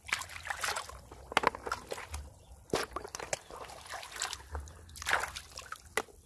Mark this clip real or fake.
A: real